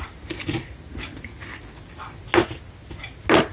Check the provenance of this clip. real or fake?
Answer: real